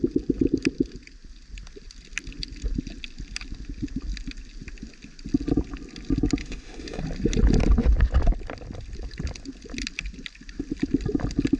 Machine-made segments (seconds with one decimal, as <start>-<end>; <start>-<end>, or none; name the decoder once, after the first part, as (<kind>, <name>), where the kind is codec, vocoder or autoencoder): 6.4-7.0 (autoencoder, DAC-VAE)